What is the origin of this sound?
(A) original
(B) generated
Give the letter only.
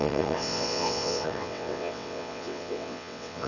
B